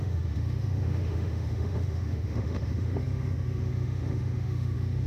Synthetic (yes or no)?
yes